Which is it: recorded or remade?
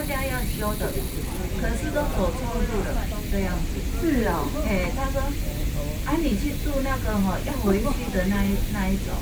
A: recorded